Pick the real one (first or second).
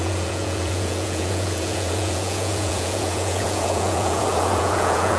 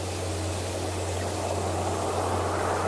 second